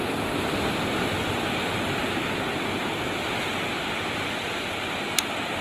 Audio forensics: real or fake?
real